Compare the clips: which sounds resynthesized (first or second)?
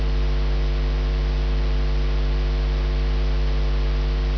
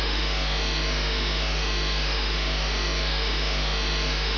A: second